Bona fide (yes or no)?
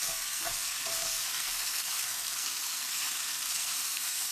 no